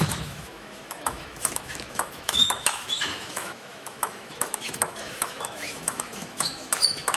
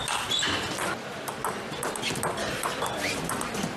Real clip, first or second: second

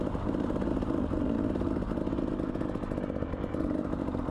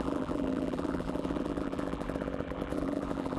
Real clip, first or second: first